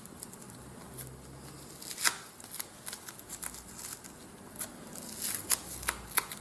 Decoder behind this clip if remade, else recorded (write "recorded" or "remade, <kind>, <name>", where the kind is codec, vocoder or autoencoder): recorded